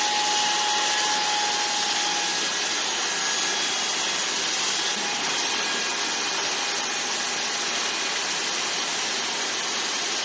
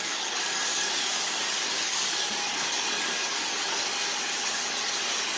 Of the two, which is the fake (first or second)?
second